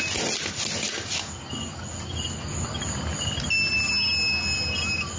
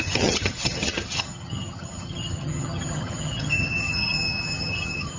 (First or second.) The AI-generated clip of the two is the second